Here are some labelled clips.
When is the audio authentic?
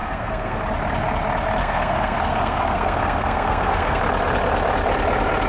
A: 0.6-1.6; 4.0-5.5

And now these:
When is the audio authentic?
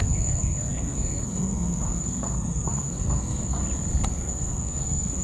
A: 3.6-4.1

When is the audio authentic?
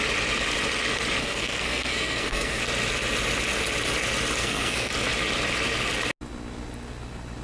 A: 0.0-1.2; 2.6-4.4; 4.9-7.4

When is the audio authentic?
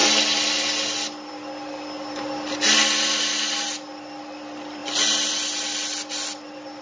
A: 0.0-6.8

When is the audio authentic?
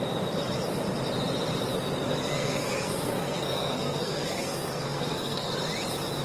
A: 0.0-2.3; 5.5-6.2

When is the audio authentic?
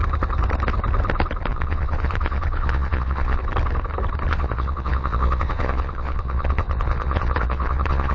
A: 0.0-1.5; 3.4-4.3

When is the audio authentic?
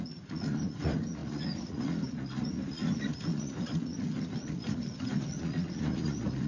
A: none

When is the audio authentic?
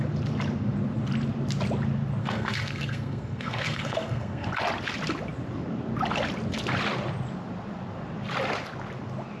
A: 0.0-2.2; 4.5-9.4